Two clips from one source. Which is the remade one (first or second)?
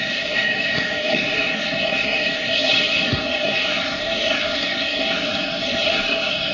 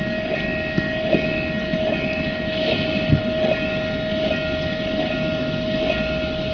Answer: first